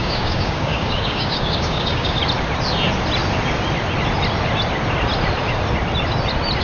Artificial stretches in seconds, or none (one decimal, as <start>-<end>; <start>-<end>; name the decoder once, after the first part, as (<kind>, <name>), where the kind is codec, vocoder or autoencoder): 0.0-2.2 (codec, DAC)